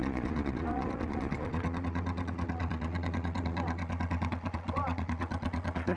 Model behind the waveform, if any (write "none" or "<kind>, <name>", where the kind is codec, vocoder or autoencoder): vocoder, Vocos